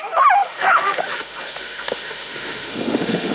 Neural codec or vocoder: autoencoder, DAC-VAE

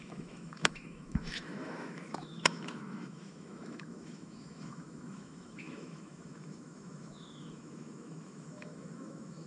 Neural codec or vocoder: autoencoder, DAC-VAE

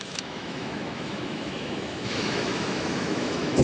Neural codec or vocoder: autoencoder, DAC-VAE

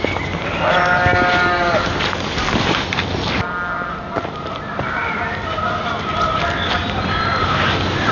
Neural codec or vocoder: none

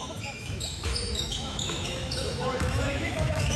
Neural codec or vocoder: autoencoder, DAC-VAE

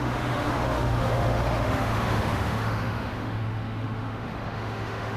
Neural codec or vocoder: autoencoder, DAC-VAE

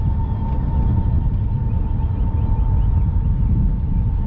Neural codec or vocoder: none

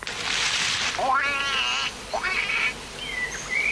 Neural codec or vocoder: none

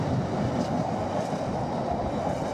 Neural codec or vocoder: none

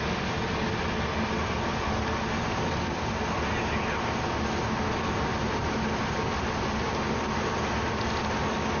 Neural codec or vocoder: none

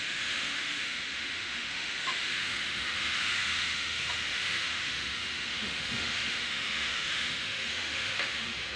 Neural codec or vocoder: autoencoder, DAC-VAE